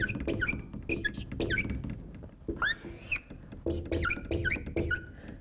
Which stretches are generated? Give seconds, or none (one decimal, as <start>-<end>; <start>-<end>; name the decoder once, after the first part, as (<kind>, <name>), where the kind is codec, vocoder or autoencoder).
none